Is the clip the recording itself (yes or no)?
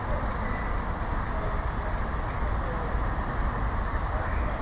yes